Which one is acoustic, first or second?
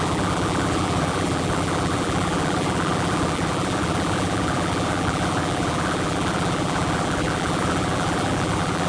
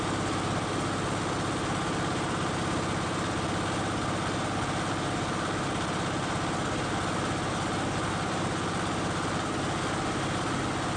second